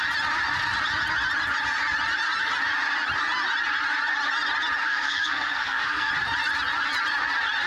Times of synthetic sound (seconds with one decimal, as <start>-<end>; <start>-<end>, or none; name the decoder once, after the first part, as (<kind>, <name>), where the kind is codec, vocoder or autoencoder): 4.8-6.1 (codec, SNAC)

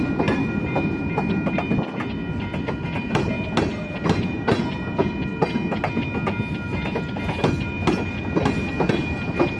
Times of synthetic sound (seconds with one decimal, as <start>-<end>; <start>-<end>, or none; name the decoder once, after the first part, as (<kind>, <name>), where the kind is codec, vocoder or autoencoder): none

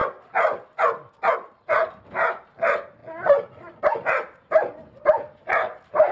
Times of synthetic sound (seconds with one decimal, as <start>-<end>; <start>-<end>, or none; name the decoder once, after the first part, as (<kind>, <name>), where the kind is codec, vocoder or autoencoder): none

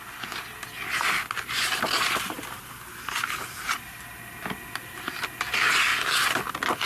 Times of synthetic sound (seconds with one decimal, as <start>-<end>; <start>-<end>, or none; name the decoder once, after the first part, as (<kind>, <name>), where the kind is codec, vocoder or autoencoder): none